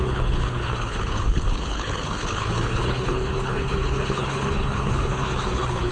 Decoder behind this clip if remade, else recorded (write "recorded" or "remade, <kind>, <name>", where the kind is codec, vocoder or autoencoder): remade, codec, HILCodec